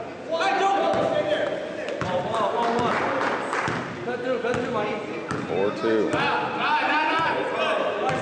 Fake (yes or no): no